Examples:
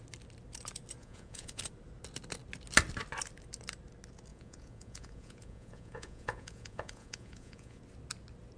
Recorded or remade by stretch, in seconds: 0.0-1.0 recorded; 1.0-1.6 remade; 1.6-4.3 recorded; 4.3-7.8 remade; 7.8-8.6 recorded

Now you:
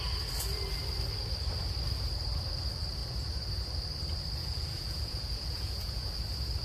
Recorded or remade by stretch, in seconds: 0.0-4.4 recorded; 4.4-6.1 remade; 6.1-6.6 recorded

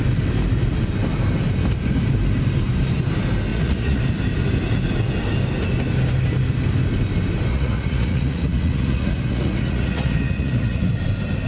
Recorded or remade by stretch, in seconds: 0.0-3.5 recorded; 3.5-4.0 remade; 4.0-7.5 recorded; 7.5-11.0 remade; 11.0-11.5 recorded